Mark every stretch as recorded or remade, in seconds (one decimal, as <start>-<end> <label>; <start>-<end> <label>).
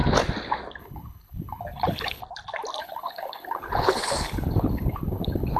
0.0-0.8 recorded; 0.8-2.2 remade; 2.2-2.8 recorded; 2.8-5.6 remade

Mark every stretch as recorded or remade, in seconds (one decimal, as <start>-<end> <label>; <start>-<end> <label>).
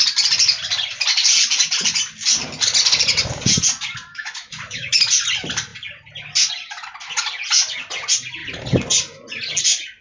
0.0-4.1 recorded; 4.1-5.0 remade; 5.0-10.0 recorded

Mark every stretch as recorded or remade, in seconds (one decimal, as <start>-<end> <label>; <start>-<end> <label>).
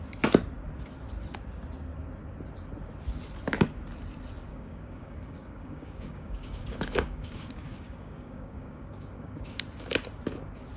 0.0-4.5 recorded; 4.5-9.6 remade; 9.6-10.8 recorded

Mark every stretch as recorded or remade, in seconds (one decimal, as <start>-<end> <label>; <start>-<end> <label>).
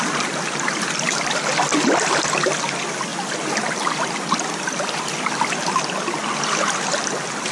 0.0-7.5 recorded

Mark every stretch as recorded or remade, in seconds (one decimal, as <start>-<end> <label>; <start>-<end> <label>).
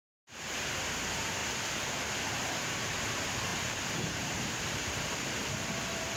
0.0-3.5 recorded; 3.5-5.4 remade; 5.4-6.2 recorded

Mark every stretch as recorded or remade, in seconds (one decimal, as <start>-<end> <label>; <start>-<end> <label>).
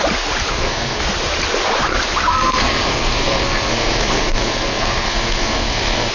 0.0-0.5 recorded; 0.5-1.0 remade; 1.0-2.3 recorded; 2.3-6.1 remade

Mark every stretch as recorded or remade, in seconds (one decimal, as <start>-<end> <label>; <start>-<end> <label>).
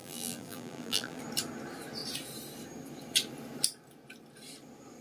0.0-1.2 remade; 1.2-5.0 recorded